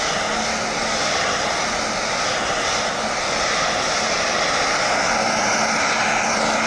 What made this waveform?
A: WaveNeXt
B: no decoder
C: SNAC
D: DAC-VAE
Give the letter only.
B